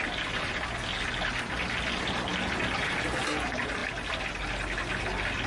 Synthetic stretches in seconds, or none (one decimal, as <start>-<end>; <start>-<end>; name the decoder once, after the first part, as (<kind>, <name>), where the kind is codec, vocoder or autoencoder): none